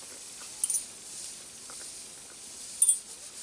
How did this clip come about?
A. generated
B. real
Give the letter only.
B